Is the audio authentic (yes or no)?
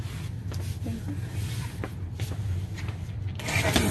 yes